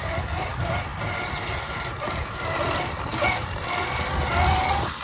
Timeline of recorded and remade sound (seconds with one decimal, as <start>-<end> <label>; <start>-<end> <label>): 0.0-5.0 recorded